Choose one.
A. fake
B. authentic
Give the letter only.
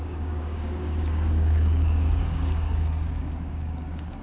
A